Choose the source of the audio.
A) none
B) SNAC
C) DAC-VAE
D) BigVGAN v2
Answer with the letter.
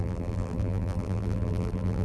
D